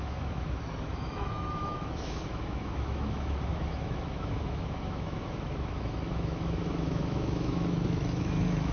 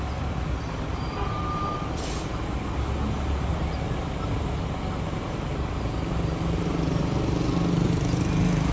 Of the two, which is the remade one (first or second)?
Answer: first